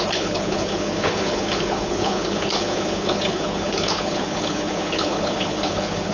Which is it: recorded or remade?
remade